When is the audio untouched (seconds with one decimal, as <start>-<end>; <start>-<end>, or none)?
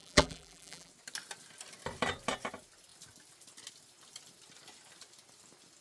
0.9-5.8